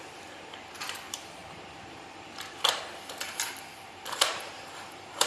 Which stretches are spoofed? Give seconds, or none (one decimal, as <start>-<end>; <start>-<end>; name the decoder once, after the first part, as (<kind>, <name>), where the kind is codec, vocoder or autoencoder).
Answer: 0.0-5.3 (vocoder, BigVGAN v2)